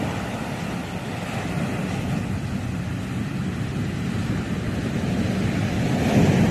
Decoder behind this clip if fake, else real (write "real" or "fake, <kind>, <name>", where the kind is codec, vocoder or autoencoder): real